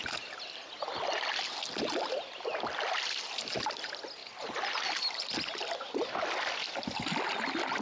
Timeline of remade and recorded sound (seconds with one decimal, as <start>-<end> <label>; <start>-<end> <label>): 0.0-7.8 recorded